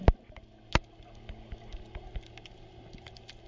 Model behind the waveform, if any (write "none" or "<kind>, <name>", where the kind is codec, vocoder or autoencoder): none